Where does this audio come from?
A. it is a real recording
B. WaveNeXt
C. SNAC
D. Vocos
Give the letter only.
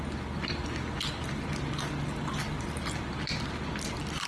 A